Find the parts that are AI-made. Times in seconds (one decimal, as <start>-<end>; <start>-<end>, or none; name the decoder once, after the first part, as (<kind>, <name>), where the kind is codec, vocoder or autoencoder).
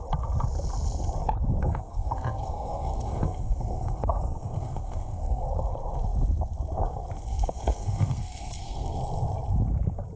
1.6-5.4 (codec, SNAC); 7.3-9.0